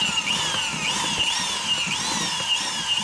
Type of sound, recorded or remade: recorded